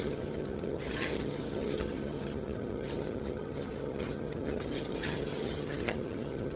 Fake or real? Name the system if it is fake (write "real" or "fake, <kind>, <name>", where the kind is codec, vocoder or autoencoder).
fake, vocoder, HiFi-GAN